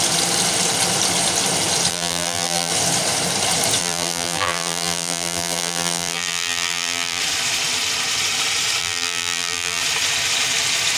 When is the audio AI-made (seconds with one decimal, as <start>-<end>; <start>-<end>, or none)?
1.9-2.7; 3.8-7.2; 8.8-9.8